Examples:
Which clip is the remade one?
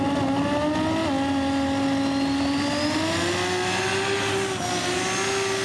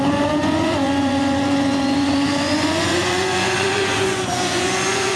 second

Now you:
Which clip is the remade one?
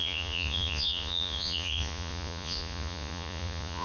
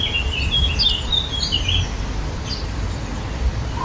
first